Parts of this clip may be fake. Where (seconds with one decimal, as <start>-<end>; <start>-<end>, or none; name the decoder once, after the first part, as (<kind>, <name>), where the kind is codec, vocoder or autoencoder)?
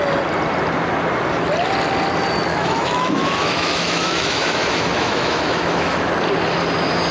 2.5-6.1 (autoencoder, DAC-VAE)